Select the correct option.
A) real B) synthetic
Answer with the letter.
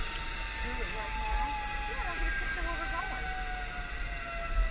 A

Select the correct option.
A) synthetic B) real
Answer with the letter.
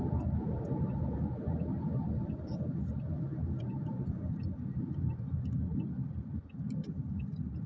B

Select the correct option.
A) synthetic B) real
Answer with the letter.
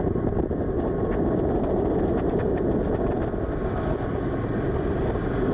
B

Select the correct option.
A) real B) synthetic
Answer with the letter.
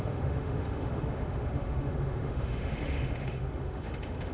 B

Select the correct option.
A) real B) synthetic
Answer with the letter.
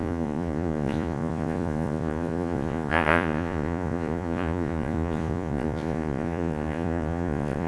B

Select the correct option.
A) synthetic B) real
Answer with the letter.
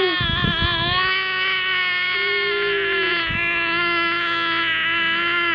B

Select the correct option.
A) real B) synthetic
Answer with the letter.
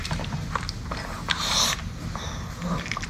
A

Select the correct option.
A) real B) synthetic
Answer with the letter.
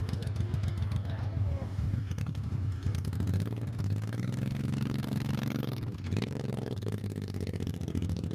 B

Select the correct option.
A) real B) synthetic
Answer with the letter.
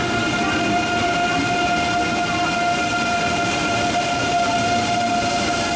A